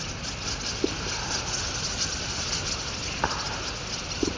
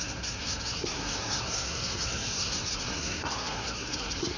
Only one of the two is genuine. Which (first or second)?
first